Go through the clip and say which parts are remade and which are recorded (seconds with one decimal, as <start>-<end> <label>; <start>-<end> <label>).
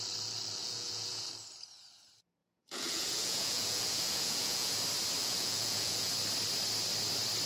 0.0-0.6 recorded; 0.6-1.3 remade; 1.3-2.4 recorded; 2.4-4.8 remade; 4.8-5.2 recorded; 5.2-6.1 remade; 6.1-7.5 recorded